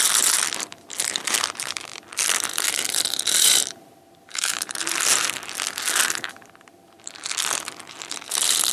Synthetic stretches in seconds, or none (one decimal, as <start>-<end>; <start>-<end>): 0.0-1.9; 2.9-8.7